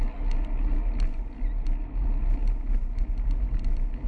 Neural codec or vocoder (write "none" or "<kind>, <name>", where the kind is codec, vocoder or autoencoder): none